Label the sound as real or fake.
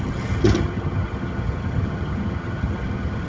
fake